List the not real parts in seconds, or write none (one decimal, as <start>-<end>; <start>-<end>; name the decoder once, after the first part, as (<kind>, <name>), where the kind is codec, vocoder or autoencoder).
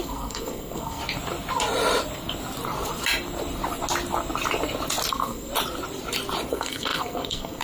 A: 0.0-1.0 (codec, SNAC); 5.1-5.5; 6.5-7.6